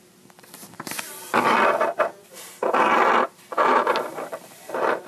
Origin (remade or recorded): remade